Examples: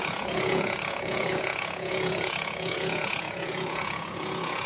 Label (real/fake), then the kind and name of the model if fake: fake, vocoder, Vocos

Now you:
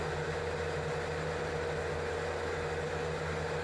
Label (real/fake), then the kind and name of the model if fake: real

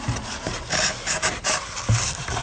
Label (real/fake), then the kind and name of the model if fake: real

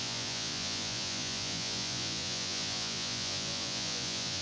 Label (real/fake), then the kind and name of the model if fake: fake, vocoder, Vocos